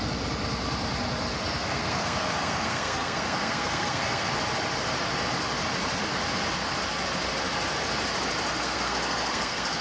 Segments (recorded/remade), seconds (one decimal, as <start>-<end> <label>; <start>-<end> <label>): 0.0-1.3 recorded; 1.3-4.3 remade; 4.3-8.5 recorded; 8.5-9.8 remade